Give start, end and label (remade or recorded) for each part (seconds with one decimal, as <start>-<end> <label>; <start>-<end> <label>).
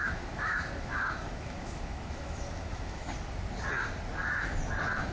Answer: 0.0-3.1 remade; 3.1-5.1 recorded